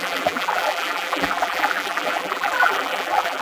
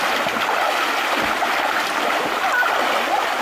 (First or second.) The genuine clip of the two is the second